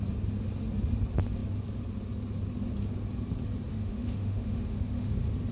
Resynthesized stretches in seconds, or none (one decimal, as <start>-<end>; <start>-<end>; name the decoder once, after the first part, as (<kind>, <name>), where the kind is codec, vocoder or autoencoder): 3.7-5.1 (autoencoder, DAC-VAE)